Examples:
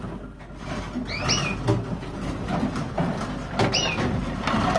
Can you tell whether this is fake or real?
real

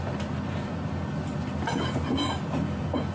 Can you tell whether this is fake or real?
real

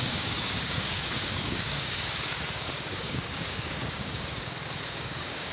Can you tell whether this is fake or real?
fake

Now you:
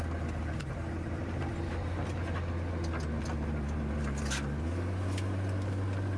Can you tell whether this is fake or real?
real